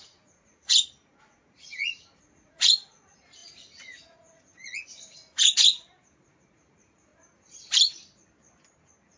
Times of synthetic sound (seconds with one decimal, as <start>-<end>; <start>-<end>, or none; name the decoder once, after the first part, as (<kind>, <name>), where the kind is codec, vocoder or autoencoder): 0.0-7.1 (vocoder, Vocos)